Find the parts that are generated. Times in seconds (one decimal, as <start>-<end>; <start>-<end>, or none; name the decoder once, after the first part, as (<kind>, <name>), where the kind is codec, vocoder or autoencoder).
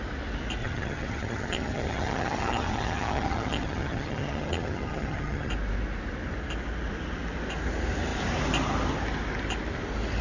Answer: 0.6-5.5 (vocoder, HiFi-GAN)